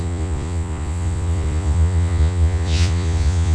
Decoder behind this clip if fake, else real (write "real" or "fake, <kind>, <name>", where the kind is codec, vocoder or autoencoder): fake, vocoder, Vocos